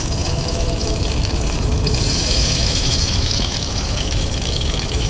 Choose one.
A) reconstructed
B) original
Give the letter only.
A